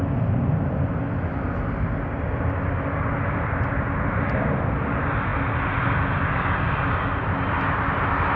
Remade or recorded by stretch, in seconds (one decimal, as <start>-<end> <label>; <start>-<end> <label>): 0.0-8.4 recorded